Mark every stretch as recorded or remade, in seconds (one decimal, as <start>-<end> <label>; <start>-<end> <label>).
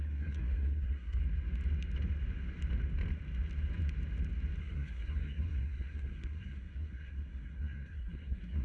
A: 0.0-1.2 remade; 1.2-4.6 recorded; 4.6-8.6 remade